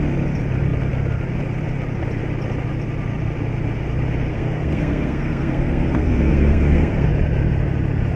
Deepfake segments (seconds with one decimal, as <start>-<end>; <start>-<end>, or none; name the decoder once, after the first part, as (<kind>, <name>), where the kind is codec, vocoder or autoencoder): 4.3-7.1 (codec, SNAC)